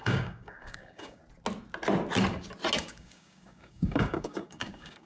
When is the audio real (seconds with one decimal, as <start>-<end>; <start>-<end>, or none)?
1.2-2.8